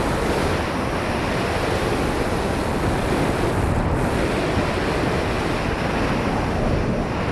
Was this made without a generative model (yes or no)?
yes